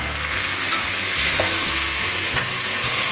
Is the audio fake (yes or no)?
yes